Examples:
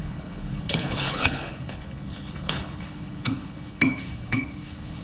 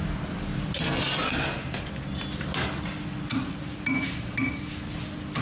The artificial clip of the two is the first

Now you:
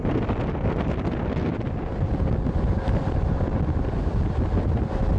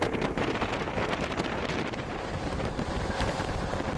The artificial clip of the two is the second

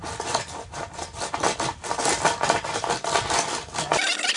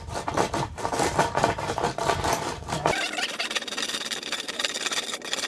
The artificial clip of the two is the second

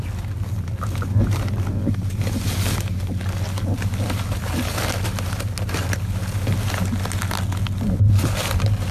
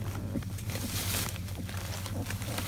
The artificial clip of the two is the second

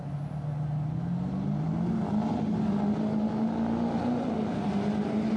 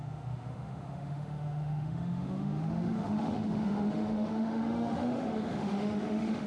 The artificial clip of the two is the second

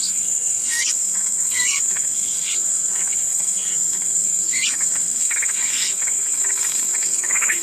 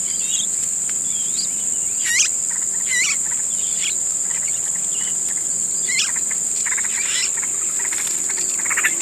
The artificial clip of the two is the first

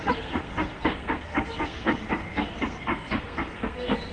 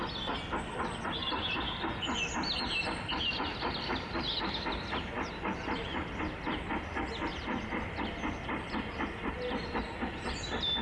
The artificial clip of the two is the first